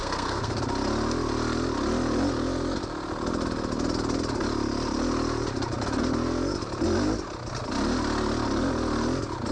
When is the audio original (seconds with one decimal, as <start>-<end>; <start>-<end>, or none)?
0.6-9.5